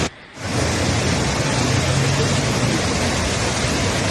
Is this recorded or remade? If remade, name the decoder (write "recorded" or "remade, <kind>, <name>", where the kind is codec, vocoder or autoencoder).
recorded